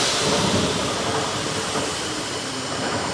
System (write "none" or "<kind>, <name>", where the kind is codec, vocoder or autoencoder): none